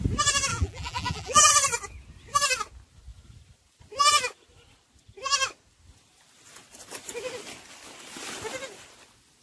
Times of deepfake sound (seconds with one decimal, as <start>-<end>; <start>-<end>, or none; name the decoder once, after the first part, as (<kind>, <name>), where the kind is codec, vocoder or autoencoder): 0.5-1.5 (vocoder, BigVGAN v2)

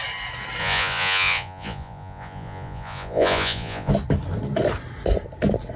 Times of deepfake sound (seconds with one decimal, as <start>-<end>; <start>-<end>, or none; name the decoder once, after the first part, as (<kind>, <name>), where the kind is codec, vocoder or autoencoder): 0.6-3.9 (vocoder, Vocos)

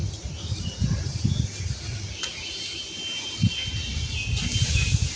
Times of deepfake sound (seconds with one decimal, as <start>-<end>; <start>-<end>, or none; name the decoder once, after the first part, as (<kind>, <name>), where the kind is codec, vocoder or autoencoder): 0.0-1.7 (vocoder, BigVGAN v2)